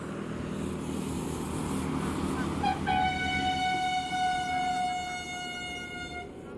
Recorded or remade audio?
recorded